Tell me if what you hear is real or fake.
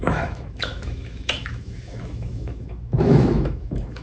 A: fake